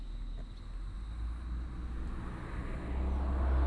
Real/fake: real